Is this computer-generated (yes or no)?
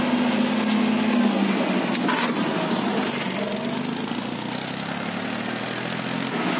no